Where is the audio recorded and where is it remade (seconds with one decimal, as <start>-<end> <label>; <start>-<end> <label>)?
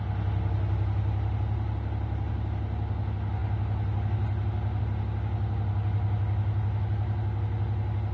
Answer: 0.0-8.1 recorded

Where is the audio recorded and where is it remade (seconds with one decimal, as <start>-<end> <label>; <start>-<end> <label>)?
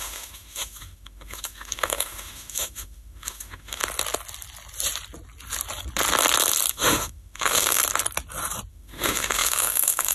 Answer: 0.0-3.8 remade; 3.8-6.7 recorded; 6.7-7.8 remade; 7.8-8.7 recorded; 8.7-10.1 remade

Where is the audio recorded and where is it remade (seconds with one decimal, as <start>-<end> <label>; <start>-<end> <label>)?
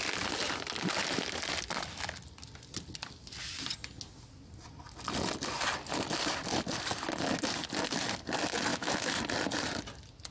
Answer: 0.0-8.7 recorded; 8.7-9.2 remade; 9.2-10.3 recorded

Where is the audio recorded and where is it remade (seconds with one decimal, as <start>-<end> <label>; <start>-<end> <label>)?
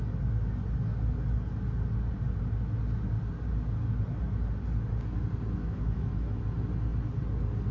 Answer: 0.0-5.6 recorded; 5.6-6.4 remade; 6.4-7.7 recorded